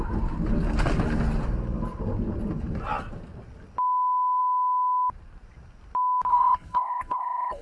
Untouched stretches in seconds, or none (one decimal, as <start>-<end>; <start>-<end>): 0.0-6.3